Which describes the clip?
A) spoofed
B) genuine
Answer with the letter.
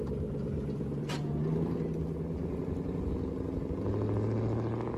B